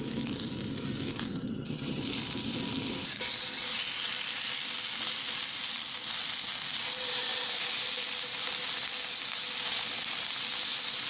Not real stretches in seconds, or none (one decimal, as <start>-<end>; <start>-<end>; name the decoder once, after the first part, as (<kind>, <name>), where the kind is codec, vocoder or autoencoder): 1.3-2.0 (vocoder, HiFi-GAN)